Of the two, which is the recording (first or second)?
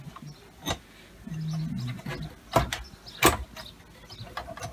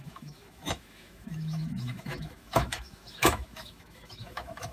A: first